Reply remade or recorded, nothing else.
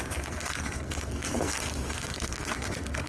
remade